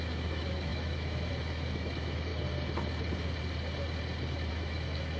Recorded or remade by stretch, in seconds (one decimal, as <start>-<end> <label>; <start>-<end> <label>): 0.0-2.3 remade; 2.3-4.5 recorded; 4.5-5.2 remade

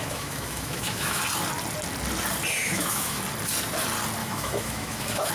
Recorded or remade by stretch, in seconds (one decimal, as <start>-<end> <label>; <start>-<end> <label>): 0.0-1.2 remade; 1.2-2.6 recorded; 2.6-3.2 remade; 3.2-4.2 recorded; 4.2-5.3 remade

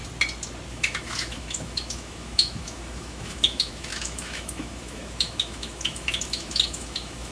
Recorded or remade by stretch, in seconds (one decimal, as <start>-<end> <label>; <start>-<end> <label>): 0.0-0.7 recorded; 0.7-7.3 remade

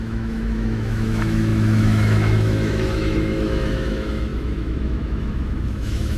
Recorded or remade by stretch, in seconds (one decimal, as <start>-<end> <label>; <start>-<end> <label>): 0.0-6.2 remade